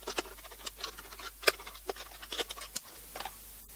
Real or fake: real